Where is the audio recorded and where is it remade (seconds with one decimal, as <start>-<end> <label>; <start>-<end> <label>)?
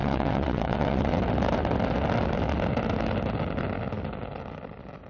0.0-1.2 remade; 1.2-5.1 recorded